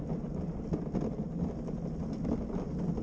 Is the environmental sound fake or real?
real